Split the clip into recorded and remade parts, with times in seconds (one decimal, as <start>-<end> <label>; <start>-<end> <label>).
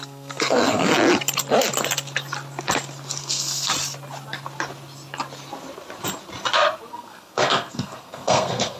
0.0-0.9 remade; 0.9-3.2 recorded; 3.2-3.7 remade; 3.7-6.9 recorded; 6.9-8.8 remade